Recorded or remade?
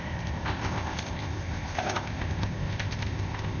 remade